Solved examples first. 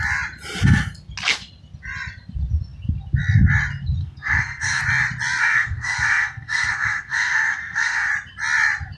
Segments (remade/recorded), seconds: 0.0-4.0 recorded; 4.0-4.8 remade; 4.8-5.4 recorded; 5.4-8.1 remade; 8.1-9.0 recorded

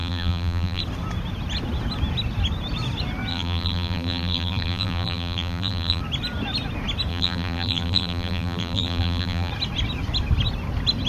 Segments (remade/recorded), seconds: 0.0-0.8 remade; 0.8-3.3 recorded; 3.3-6.0 remade; 6.0-7.1 recorded; 7.1-9.5 remade; 9.5-11.1 recorded

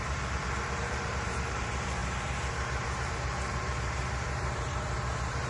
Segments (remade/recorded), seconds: 0.0-5.5 remade

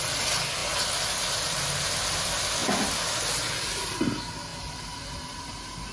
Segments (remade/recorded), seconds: 0.0-5.9 recorded

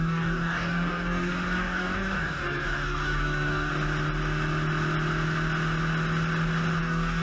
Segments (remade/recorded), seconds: 0.0-3.7 remade; 3.7-6.8 recorded; 6.8-7.2 remade

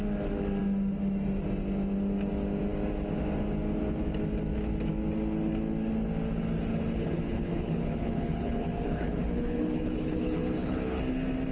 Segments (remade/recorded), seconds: 0.0-6.7 recorded; 6.7-11.0 remade; 11.0-11.5 recorded